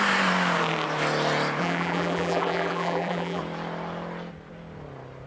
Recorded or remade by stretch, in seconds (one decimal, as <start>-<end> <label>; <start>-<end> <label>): 0.0-1.6 recorded; 1.6-3.4 remade; 3.4-5.3 recorded